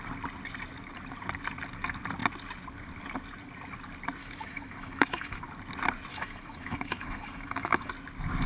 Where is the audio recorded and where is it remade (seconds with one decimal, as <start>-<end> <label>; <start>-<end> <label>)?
0.0-4.2 recorded; 4.2-5.4 remade; 5.4-6.1 recorded; 6.1-7.9 remade; 7.9-8.5 recorded